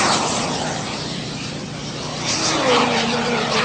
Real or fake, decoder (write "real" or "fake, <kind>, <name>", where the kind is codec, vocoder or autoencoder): real